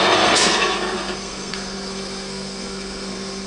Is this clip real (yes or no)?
no